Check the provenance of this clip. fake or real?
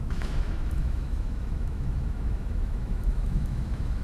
fake